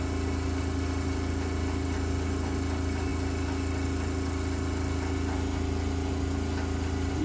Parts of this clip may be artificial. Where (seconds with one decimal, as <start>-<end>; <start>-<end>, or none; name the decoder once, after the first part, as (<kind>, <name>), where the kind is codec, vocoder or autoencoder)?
none

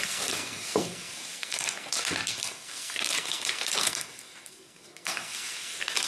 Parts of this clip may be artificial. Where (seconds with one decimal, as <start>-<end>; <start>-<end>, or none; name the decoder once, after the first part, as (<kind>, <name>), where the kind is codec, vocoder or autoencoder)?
0.0-6.1 (codec, SNAC)

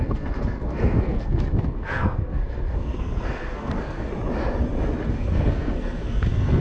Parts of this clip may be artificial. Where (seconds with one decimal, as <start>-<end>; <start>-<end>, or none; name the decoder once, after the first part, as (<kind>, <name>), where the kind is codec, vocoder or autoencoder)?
0.0-4.1 (codec, SNAC); 5.1-6.6

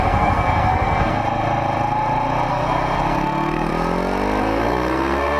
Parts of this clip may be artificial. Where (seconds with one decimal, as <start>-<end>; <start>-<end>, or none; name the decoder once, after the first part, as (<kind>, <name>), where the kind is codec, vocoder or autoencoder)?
0.0-1.2 (codec, SNAC); 2.5-3.7; 4.4-5.4